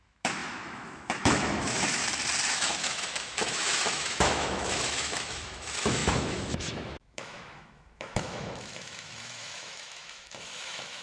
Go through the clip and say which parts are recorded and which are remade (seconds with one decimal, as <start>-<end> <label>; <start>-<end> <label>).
0.0-2.0 remade; 2.0-2.5 recorded; 2.5-11.0 remade

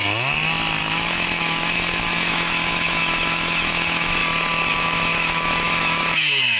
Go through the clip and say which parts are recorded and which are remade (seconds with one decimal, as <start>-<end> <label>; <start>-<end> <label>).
0.0-0.8 recorded; 0.8-4.2 remade; 4.2-4.8 recorded; 4.8-6.6 remade

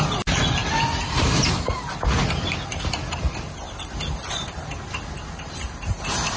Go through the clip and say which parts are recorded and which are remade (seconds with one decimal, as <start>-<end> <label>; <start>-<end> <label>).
0.0-6.4 recorded

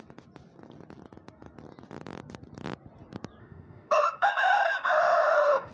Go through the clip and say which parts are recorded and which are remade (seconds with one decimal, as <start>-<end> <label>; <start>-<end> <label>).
0.0-3.4 recorded; 3.4-5.7 remade